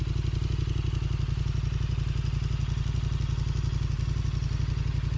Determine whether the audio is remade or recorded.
recorded